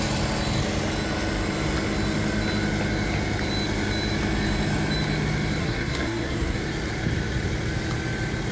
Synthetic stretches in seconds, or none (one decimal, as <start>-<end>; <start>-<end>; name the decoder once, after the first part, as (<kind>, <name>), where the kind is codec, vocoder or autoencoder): 5.6-6.6 (codec, SNAC)